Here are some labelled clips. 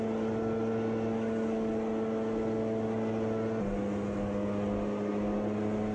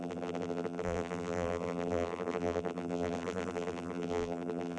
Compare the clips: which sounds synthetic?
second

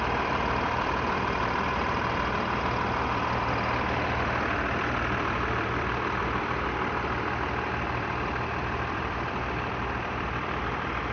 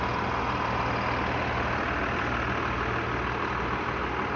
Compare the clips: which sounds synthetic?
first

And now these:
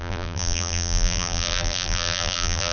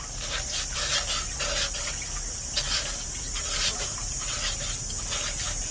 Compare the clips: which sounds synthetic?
first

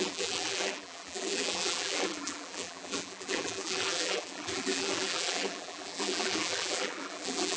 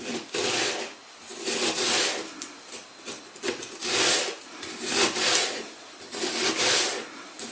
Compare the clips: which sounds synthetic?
first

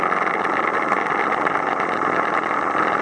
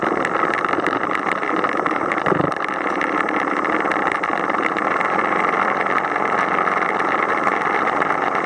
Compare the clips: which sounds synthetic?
second